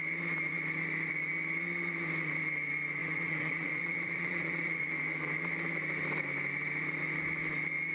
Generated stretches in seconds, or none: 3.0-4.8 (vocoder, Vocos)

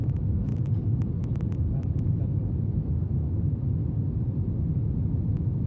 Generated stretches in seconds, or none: none

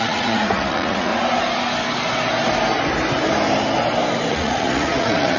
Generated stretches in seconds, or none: 0.0-1.1 (vocoder, Vocos); 4.3-5.4

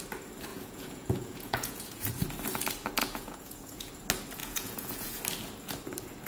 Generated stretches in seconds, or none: 0.5-2.1 (vocoder, Vocos); 3.0-3.9; 4.4-5.2

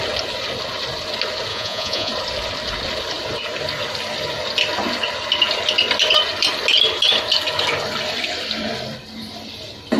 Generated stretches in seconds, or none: 1.5-2.1 (vocoder, Vocos)

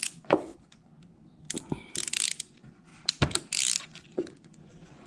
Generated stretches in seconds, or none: 0.0-0.5 (vocoder, Vocos); 2.4-2.9; 3.8-5.1